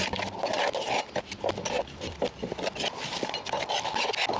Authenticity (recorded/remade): recorded